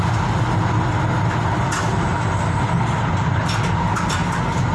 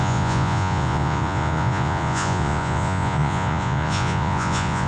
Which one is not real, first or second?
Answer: second